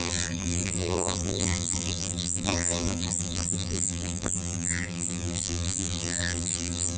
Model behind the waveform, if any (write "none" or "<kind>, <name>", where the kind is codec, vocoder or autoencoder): vocoder, BigVGAN v2